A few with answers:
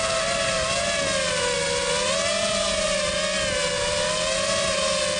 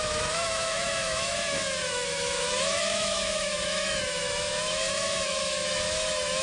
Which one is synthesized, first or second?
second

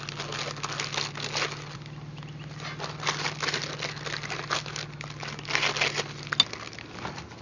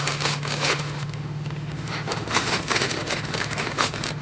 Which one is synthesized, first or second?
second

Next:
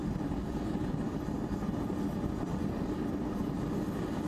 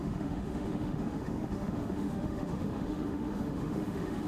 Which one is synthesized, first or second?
second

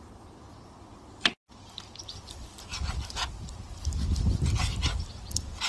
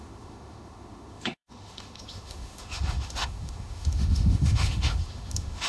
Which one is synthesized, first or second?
second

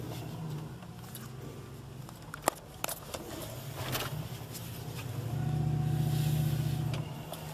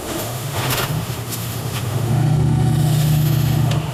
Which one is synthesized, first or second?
second